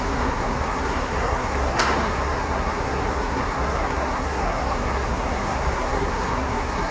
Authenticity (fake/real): fake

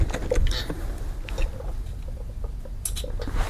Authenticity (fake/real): real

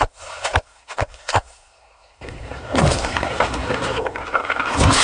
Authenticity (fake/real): fake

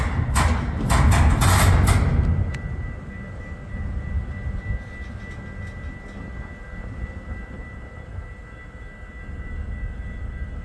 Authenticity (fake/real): real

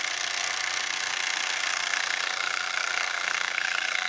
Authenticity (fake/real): fake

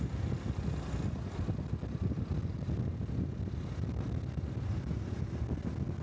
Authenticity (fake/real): real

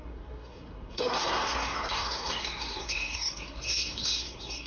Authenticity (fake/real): fake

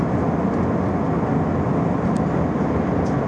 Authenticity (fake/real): real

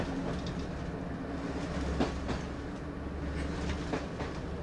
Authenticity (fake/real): real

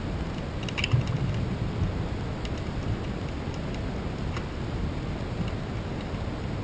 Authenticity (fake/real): real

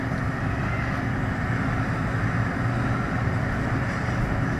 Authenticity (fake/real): real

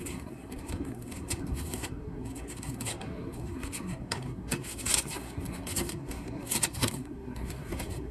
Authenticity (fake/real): fake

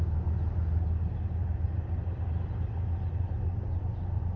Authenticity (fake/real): real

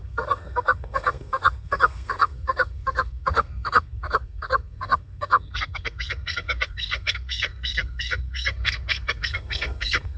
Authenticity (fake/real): fake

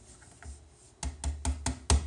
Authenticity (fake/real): real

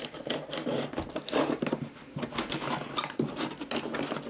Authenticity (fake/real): real